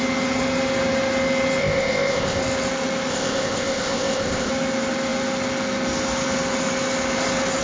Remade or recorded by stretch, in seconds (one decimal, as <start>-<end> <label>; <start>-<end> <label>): 0.0-1.6 recorded; 1.6-2.4 remade; 2.4-3.1 recorded; 3.1-4.5 remade; 4.5-7.6 recorded